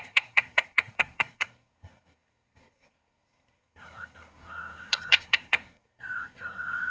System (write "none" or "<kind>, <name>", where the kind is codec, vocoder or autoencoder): codec, SNAC